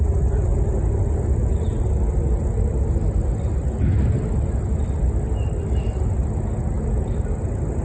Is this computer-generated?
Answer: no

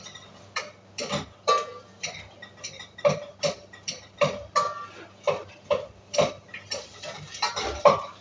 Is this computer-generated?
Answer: yes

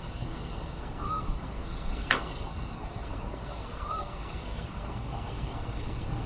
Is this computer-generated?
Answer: yes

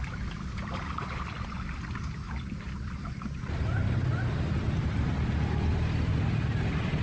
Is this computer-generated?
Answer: no